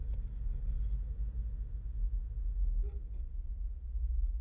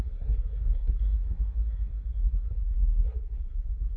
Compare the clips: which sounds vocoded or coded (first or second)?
second